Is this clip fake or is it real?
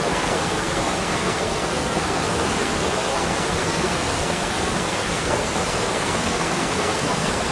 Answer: fake